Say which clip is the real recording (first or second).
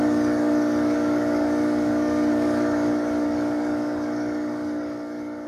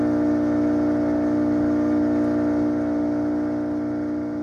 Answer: second